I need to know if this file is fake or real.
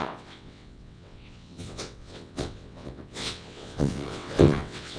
fake